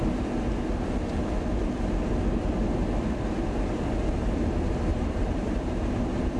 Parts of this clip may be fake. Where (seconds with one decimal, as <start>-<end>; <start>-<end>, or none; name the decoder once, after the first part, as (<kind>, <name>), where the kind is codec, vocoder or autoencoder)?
4.9-6.4 (vocoder, BigVGAN v2)